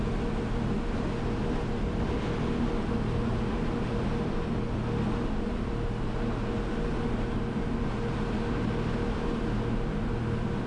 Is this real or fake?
real